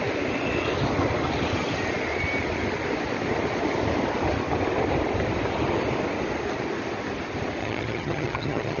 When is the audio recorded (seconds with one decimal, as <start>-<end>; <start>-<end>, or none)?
0.0-7.6